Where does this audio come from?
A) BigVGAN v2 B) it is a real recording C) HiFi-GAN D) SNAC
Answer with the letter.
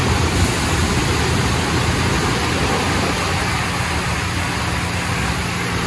B